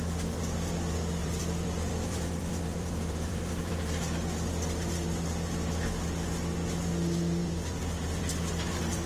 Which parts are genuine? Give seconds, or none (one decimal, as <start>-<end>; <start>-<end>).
0.0-1.2; 4.1-7.4